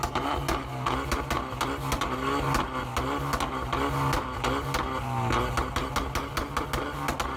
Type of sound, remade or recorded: recorded